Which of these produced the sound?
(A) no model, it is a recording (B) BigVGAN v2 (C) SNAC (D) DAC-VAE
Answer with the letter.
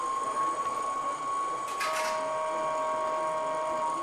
A